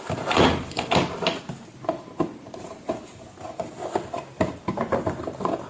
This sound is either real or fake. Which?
real